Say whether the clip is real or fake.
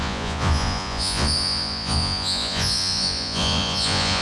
fake